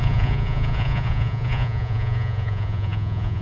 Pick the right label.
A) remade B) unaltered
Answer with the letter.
A